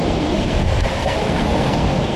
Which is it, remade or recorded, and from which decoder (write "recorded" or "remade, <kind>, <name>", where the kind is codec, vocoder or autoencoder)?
remade, codec, SNAC